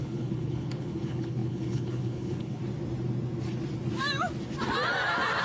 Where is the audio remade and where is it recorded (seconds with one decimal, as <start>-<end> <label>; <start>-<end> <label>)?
0.0-2.6 remade; 2.6-5.4 recorded